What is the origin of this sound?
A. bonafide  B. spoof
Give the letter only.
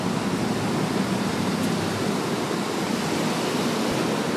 A